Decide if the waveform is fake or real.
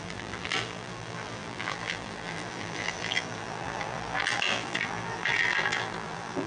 fake